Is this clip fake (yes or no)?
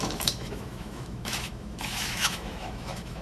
yes